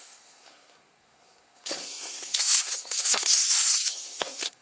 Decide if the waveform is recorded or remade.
remade